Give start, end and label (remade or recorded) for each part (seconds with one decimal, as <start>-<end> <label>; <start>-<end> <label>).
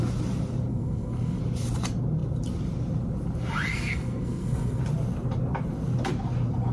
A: 0.0-0.7 recorded; 0.7-1.4 remade; 1.4-3.7 recorded; 3.7-4.8 remade; 4.8-6.7 recorded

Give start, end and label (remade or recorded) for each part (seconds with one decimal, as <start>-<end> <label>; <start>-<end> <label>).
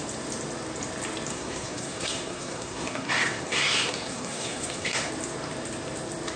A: 0.0-1.3 recorded; 1.3-5.1 remade; 5.1-6.4 recorded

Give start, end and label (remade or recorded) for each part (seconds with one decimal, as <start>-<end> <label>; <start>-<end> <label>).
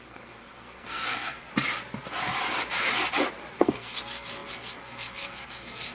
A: 0.0-1.5 remade; 1.5-3.5 recorded; 3.5-5.9 remade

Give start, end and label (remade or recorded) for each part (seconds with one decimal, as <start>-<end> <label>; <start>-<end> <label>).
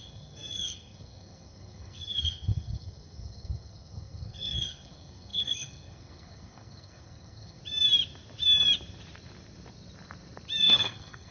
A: 0.0-7.6 remade; 7.6-10.6 recorded; 10.6-11.3 remade